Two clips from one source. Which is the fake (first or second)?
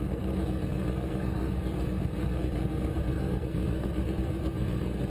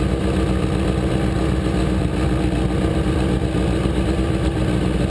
first